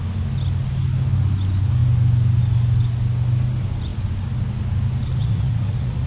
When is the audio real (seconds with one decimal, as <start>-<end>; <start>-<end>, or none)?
0.0-5.2